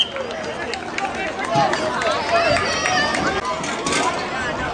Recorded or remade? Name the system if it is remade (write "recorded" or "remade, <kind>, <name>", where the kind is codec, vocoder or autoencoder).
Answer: recorded